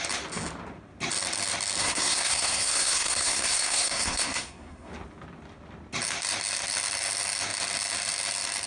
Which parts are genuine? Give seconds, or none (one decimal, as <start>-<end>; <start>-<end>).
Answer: 0.0-1.8; 4.9-8.7